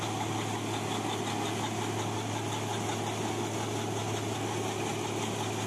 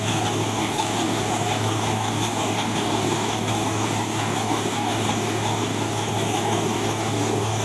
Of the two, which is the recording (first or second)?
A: first